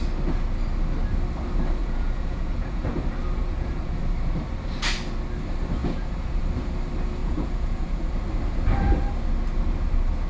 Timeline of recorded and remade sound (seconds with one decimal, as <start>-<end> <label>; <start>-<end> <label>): 0.0-1.8 recorded; 1.8-3.0 remade; 3.0-3.4 recorded; 3.4-4.0 remade; 4.0-5.8 recorded; 5.8-6.4 remade; 6.4-7.2 recorded; 7.2-8.2 remade; 8.2-10.3 recorded